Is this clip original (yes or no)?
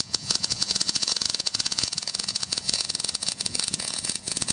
no